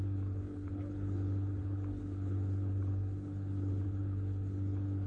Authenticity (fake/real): fake